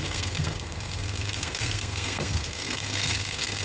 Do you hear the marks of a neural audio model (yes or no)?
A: yes